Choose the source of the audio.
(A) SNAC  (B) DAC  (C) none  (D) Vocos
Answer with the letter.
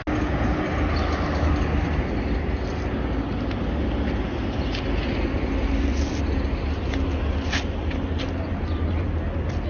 C